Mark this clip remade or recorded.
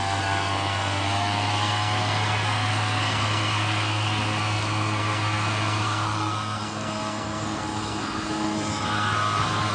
remade